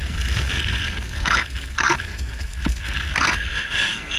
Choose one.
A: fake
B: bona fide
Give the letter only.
A